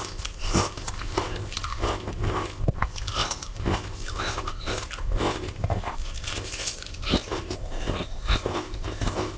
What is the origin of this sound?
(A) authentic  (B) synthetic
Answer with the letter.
B